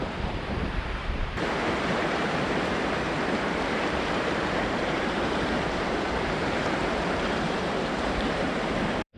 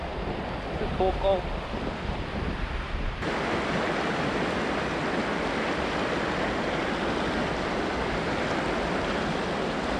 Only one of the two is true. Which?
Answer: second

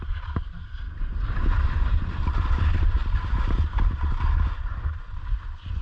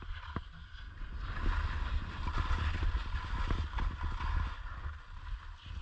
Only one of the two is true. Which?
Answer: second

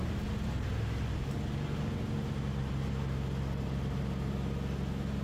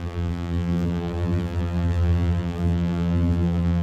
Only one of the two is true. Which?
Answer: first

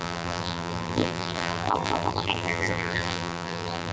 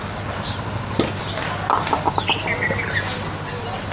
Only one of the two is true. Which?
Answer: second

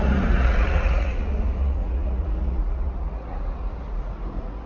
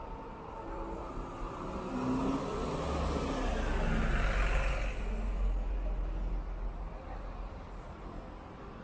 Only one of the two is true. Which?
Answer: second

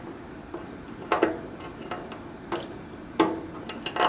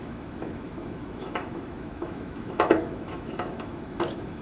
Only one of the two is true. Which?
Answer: first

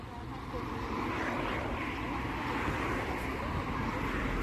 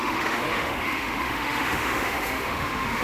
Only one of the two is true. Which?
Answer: first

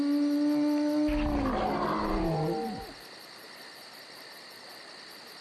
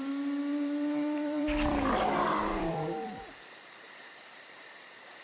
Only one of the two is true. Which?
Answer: first